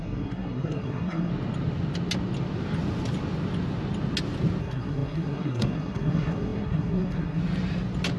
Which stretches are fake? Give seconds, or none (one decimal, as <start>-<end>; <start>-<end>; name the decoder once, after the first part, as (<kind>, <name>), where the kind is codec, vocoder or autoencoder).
0.0-1.3 (codec, SNAC); 4.6-7.4